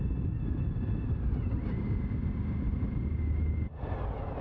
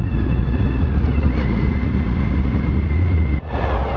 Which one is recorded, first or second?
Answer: first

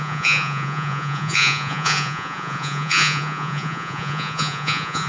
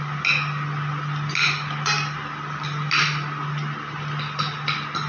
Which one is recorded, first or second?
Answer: second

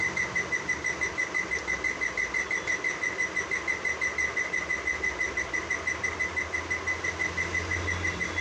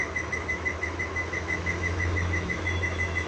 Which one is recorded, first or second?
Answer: first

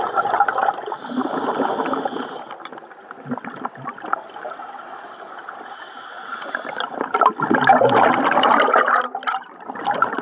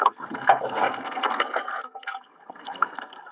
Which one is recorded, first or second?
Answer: first